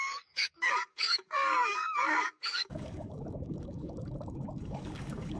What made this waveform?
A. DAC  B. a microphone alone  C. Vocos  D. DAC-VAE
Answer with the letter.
A